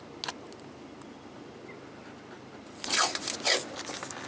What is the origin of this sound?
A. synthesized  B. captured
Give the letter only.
B